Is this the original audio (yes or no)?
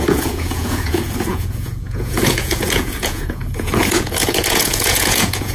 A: no